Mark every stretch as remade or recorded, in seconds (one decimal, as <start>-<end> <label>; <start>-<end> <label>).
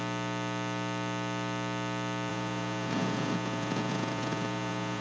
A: 0.0-2.3 recorded; 2.3-5.0 remade